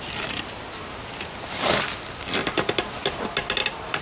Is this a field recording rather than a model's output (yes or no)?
yes